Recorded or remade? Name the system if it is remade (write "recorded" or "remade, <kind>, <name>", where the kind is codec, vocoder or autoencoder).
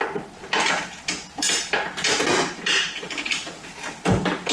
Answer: recorded